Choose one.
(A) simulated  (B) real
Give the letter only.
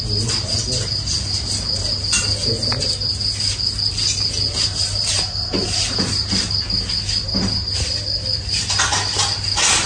B